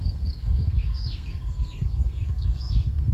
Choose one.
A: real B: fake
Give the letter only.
B